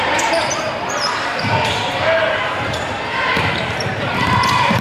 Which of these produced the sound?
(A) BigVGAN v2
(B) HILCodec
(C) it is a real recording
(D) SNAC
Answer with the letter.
A